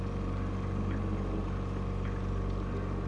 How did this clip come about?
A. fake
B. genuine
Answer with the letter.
B